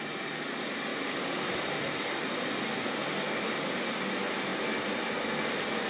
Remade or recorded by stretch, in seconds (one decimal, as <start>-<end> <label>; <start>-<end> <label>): 0.0-0.9 recorded; 0.9-2.5 remade; 2.5-3.0 recorded; 3.0-3.7 remade; 3.7-5.9 recorded